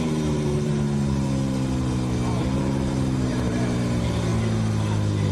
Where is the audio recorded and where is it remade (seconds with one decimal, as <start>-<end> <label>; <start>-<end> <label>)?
0.0-0.7 remade; 0.7-2.6 recorded; 2.6-4.3 remade; 4.3-5.3 recorded